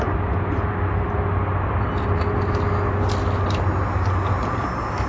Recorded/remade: recorded